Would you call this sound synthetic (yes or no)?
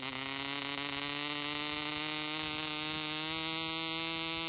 no